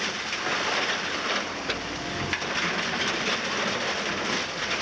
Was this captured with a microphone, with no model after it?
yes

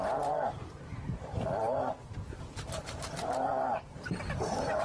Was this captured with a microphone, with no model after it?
no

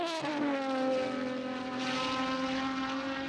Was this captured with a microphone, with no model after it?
yes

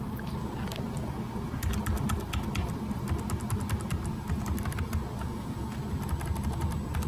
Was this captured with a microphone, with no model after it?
yes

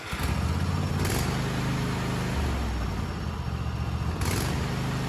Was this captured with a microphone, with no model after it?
yes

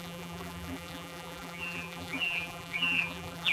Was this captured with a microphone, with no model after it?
no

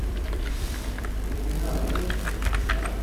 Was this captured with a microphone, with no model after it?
no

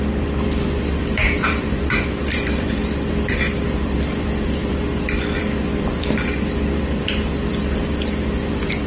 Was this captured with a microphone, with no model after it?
no